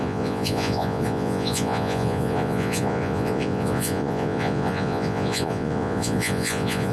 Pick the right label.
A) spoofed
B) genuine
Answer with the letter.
A